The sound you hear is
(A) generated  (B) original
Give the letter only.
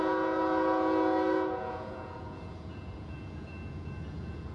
A